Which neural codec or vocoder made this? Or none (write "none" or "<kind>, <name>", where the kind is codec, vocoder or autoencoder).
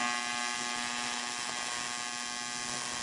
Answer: none